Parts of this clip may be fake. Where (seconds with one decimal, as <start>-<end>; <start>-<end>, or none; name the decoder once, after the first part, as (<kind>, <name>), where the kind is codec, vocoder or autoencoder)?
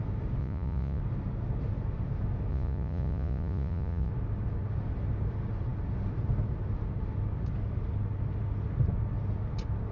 0.4-1.0 (vocoder, Vocos); 2.5-4.1